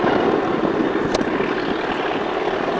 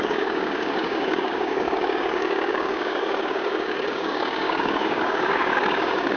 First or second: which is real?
first